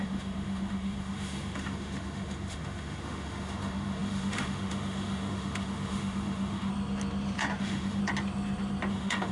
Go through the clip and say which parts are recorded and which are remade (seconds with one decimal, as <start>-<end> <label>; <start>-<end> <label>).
0.0-6.7 remade; 6.7-7.6 recorded; 7.6-8.0 remade; 8.0-8.9 recorded; 8.9-9.3 remade